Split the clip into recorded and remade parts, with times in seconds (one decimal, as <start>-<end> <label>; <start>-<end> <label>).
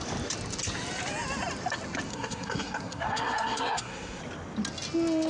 0.0-2.1 recorded; 2.1-4.2 remade; 4.2-5.3 recorded